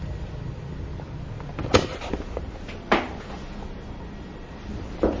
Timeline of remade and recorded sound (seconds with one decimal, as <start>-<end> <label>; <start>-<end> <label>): 0.0-0.9 remade; 0.9-4.0 recorded; 4.0-5.2 remade

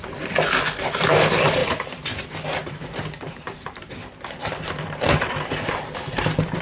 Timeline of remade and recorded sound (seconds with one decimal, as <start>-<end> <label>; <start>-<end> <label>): 0.0-1.6 recorded; 1.6-2.1 remade; 2.1-2.6 recorded; 2.6-6.6 remade